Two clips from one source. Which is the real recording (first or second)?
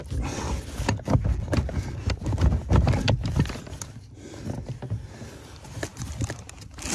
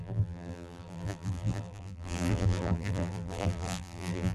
first